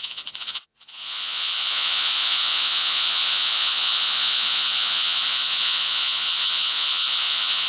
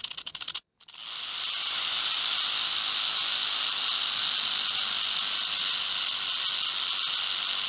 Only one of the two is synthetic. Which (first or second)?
first